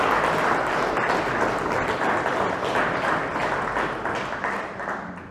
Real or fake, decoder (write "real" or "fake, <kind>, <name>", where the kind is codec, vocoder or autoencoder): real